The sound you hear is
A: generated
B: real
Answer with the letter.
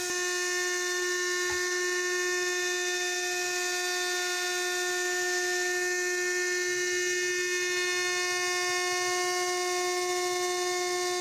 B